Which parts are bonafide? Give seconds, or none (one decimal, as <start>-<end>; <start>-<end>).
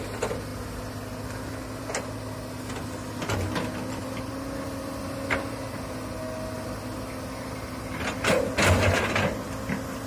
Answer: 0.0-10.1